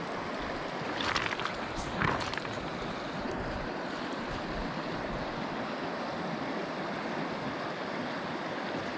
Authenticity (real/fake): real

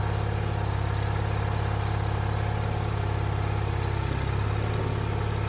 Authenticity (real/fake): real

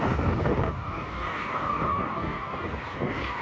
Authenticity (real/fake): fake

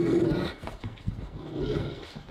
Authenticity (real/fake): fake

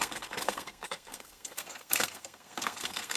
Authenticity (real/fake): fake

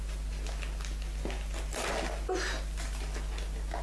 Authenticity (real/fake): real